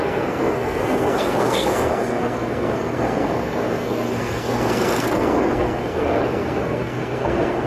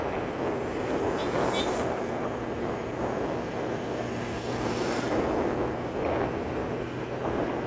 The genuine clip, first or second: second